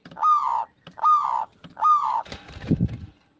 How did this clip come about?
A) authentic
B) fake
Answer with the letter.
A